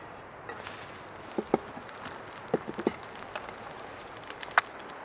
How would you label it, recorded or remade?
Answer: recorded